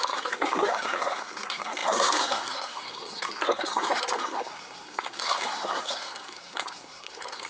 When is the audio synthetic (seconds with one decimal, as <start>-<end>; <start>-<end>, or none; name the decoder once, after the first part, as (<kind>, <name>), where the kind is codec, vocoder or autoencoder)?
0.0-7.5 (codec, SNAC)